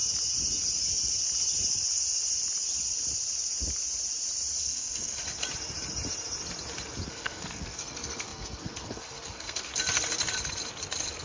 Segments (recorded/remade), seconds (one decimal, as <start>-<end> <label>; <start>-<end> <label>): 0.0-4.6 recorded; 4.6-5.2 remade; 5.2-7.1 recorded; 7.1-9.7 remade; 9.7-11.2 recorded